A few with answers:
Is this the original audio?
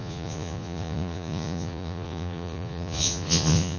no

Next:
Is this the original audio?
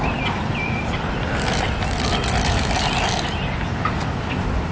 yes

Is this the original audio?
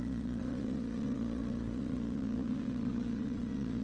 no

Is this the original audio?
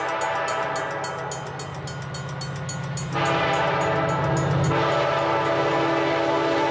yes